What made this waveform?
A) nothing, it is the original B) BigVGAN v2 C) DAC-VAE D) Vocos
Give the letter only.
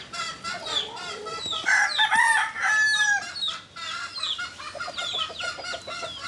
A